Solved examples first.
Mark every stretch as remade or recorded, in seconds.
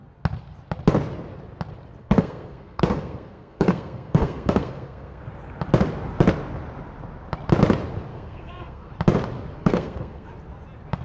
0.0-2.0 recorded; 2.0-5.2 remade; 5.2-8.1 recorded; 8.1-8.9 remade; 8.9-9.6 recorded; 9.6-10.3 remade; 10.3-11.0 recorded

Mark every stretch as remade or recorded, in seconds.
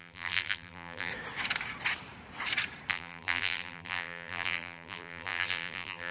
0.0-1.1 remade; 1.1-2.9 recorded; 2.9-6.1 remade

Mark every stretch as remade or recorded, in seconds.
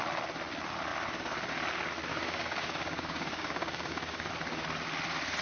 0.0-2.1 recorded; 2.1-4.3 remade; 4.3-5.4 recorded